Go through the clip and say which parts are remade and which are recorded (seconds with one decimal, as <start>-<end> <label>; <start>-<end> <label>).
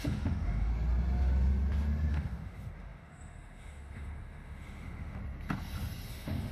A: 0.0-0.7 remade; 0.7-2.1 recorded; 2.1-5.2 remade; 5.2-6.1 recorded; 6.1-6.5 remade